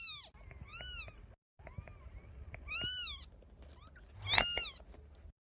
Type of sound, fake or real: real